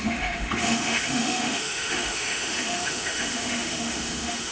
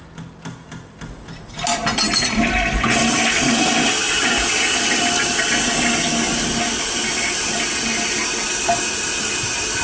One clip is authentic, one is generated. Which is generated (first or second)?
first